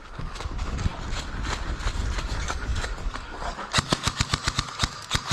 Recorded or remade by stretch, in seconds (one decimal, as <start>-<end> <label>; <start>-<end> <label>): 0.0-0.9 remade; 0.9-2.2 recorded; 2.2-5.3 remade